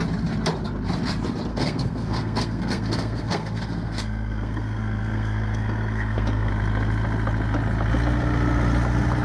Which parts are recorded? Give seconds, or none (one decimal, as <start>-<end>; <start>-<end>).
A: 0.0-1.5; 6.5-9.2